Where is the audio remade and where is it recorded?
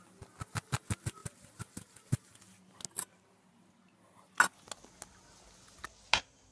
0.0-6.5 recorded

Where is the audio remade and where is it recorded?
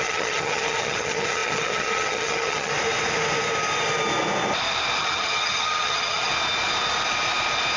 0.0-2.7 remade; 2.7-5.0 recorded; 5.0-6.3 remade; 6.3-7.8 recorded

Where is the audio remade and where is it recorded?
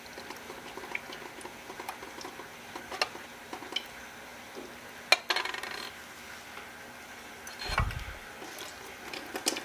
0.0-9.6 recorded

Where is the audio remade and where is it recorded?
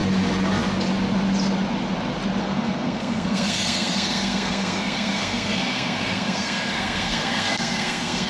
0.0-2.4 recorded; 2.4-8.3 remade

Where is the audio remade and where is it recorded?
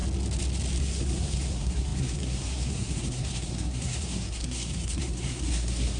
0.0-0.8 recorded; 0.8-6.0 remade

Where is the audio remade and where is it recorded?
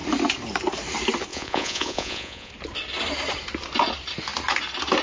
0.0-1.3 recorded; 1.3-2.5 remade; 2.5-5.0 recorded